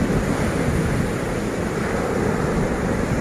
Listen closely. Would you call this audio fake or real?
real